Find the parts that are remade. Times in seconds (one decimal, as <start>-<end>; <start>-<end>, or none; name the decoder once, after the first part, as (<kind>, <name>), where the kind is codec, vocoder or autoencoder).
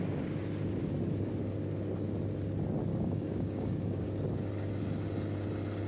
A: 2.9-4.1 (codec, DAC)